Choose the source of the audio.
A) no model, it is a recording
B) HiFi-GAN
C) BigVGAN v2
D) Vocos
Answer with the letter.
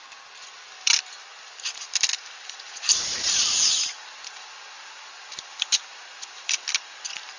C